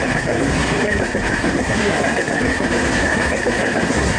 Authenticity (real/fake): fake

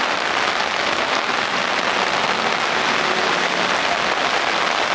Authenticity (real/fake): real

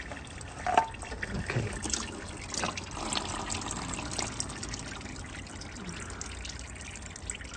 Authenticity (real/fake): real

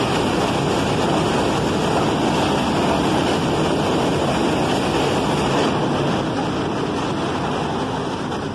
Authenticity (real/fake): real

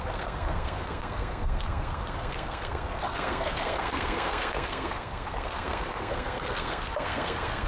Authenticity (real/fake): fake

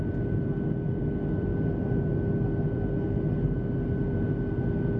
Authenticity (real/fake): real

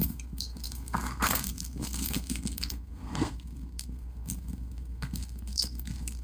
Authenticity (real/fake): fake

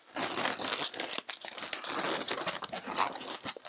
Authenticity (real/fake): real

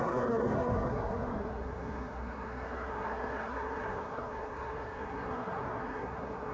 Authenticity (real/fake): fake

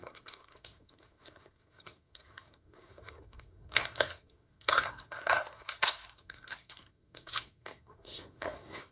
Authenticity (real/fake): fake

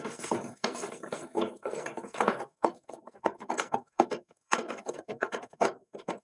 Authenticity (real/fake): fake